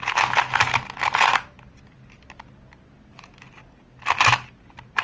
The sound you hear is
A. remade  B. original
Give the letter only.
B